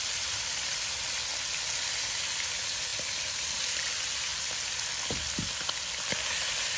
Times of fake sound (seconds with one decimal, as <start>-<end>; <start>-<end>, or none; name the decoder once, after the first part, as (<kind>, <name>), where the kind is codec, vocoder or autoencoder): none

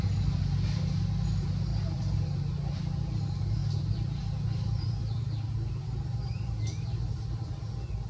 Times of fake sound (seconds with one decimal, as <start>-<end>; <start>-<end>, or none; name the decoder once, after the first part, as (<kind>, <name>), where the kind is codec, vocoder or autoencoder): 1.7-2.8 (vocoder, BigVGAN v2); 3.6-8.1

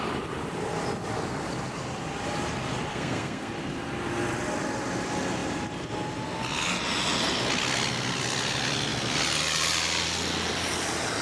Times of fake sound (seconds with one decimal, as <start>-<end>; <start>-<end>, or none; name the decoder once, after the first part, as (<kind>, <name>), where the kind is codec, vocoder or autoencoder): 2.9-3.5 (codec, SNAC)

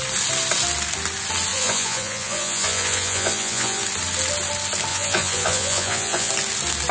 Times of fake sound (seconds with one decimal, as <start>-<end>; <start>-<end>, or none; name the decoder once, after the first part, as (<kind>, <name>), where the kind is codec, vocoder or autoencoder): 1.5-3.8 (vocoder, Vocos); 4.9-6.3

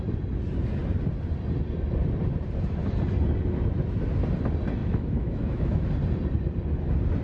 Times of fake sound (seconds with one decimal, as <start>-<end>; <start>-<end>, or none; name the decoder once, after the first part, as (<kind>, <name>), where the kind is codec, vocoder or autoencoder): 4.8-5.9 (autoencoder, DAC-VAE)

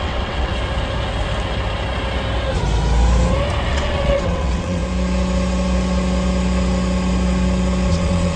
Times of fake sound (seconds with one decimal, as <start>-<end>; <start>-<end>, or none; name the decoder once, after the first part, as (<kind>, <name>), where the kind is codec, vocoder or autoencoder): 0.0-0.5 (vocoder, WaveNeXt); 3.7-4.8; 7.9-8.4

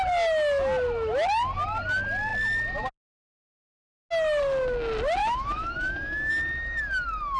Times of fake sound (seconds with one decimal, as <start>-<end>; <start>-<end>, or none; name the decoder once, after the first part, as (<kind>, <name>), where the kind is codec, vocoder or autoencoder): 5.2-6.3 (autoencoder, DAC-VAE)